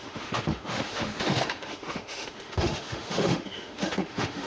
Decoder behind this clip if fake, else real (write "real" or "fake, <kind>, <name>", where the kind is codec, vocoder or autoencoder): fake, autoencoder, DAC-VAE